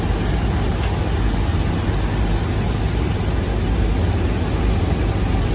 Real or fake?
real